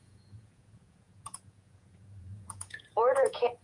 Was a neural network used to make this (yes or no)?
yes